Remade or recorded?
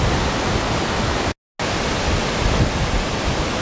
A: recorded